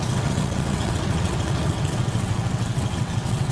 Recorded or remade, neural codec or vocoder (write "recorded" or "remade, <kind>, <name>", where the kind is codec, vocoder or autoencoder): remade, vocoder, WaveNeXt